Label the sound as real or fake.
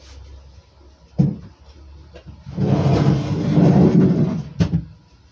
real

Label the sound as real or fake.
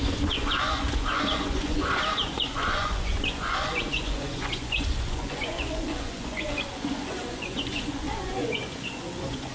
fake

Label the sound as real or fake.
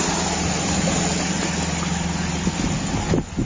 real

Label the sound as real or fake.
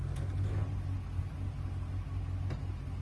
real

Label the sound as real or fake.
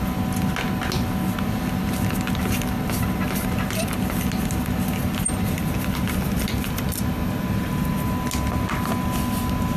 real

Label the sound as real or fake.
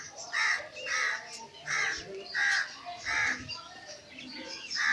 real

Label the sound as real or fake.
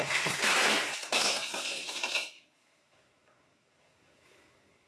fake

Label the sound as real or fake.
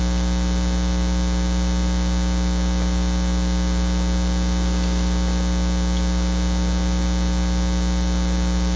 real